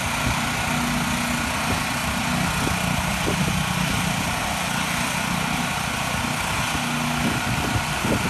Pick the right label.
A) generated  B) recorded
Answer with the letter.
B